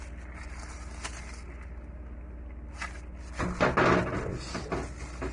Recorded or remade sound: recorded